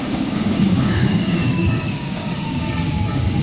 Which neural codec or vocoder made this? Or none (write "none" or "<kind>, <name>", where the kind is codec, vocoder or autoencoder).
codec, DAC